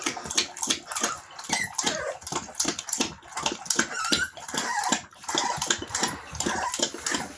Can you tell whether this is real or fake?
real